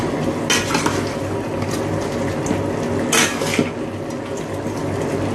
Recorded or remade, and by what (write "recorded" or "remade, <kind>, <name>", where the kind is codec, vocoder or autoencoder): recorded